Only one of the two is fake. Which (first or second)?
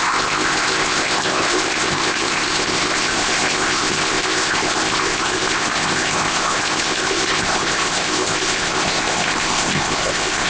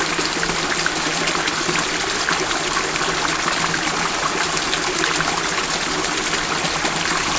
first